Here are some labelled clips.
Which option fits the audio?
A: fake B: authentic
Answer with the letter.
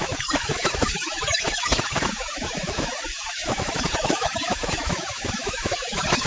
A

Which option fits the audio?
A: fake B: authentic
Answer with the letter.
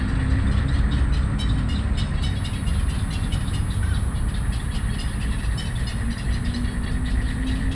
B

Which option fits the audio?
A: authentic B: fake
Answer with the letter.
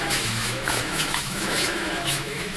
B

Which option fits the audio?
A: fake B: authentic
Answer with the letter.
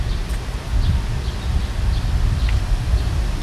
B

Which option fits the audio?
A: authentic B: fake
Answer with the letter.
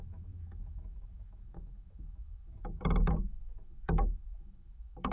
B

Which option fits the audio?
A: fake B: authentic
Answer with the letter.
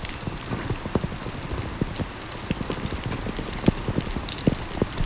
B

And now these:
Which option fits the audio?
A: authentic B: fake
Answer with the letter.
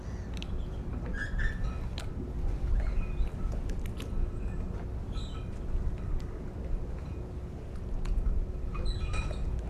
A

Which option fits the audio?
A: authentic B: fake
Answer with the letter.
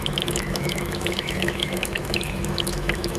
B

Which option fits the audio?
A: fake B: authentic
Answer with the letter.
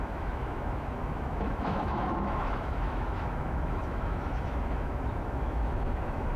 A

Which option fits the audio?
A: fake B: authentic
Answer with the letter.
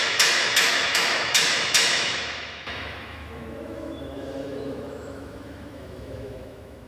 A